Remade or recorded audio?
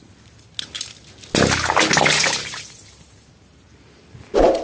recorded